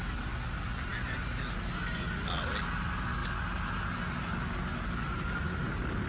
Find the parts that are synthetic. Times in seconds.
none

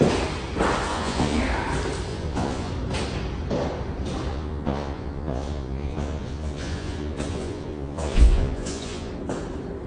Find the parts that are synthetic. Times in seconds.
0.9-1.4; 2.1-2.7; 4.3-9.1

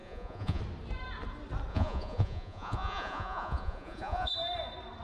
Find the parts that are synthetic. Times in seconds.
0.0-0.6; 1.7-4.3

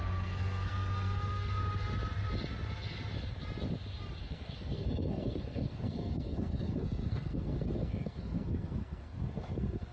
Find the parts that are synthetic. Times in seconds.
0.0-1.6; 4.2-9.9

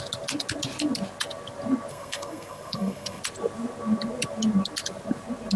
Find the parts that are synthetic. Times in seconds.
1.9-3.2

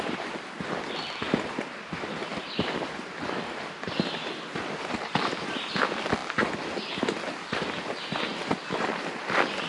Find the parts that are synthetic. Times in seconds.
none

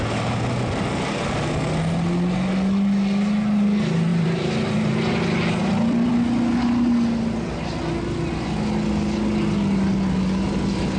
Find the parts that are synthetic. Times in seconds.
4.1-6.1